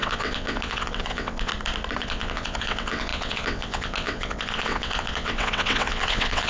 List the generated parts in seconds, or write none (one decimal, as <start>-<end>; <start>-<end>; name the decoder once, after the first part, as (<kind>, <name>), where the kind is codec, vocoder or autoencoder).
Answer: 0.0-1.5 (vocoder, WaveNeXt); 2.0-6.5